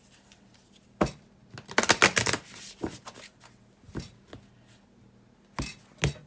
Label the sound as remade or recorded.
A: recorded